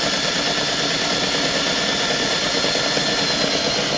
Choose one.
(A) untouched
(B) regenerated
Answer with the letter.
A